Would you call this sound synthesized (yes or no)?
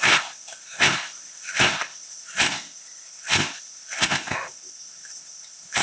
yes